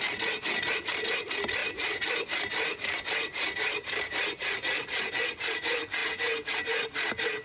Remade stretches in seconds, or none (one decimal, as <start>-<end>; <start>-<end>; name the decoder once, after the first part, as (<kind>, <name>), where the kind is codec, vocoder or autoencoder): 1.6-4.8 (vocoder, BigVGAN v2); 6.0-6.5

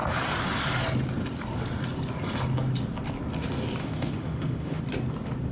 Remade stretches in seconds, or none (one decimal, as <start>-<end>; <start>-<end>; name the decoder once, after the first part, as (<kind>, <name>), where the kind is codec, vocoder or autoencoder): 3.8-4.8 (autoencoder, DAC-VAE)

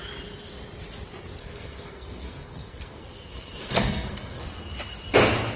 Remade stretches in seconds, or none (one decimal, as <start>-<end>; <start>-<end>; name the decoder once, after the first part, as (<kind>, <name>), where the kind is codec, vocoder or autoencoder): 1.4-4.4 (codec, SNAC)